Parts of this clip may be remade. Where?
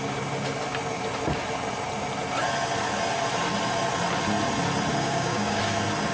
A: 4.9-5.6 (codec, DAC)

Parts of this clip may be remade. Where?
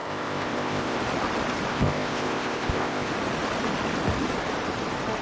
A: 0.0-1.0 (codec, ZipCodec); 1.7-3.1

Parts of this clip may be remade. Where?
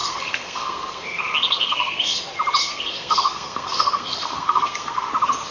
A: 0.0-2.2 (codec, SNAC); 2.6-5.1